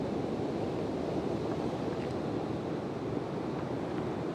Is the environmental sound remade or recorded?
recorded